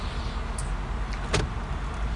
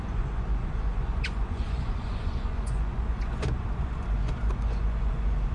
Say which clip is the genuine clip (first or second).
first